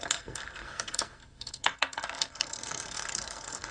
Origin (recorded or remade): remade